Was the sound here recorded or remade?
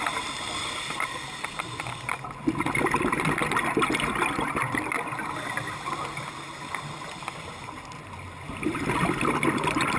recorded